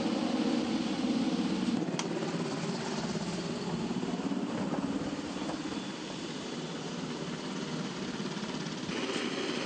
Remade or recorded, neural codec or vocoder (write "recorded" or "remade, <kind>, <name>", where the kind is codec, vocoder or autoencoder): recorded